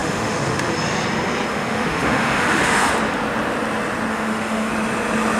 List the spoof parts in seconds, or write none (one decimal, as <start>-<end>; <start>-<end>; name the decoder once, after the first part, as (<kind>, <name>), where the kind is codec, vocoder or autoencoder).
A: 0.0-0.7 (autoencoder, DAC-VAE); 1.5-2.9; 4.1-4.7